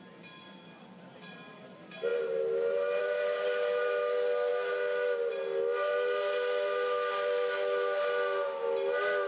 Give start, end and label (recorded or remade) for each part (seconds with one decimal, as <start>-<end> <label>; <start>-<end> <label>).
0.0-9.3 recorded

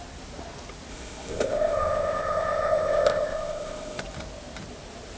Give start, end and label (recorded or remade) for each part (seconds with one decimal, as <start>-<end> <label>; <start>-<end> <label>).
0.0-0.9 recorded; 0.9-4.0 remade; 4.0-5.2 recorded

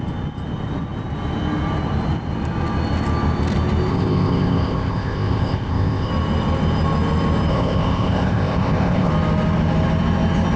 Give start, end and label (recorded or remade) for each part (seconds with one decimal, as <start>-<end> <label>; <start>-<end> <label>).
0.0-3.9 recorded; 3.9-6.1 remade; 6.1-7.5 recorded; 7.5-9.1 remade; 9.1-10.6 recorded

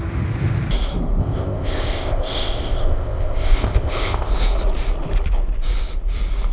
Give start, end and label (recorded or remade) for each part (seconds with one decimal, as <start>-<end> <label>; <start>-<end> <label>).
0.0-1.2 recorded; 1.2-4.3 remade; 4.3-6.5 recorded